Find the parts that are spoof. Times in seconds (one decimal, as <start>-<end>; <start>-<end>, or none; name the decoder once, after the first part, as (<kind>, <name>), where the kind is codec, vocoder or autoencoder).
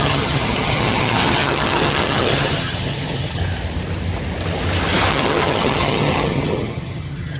0.0-3.4 (vocoder, HiFi-GAN); 5.1-7.4